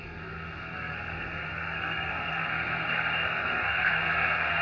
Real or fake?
fake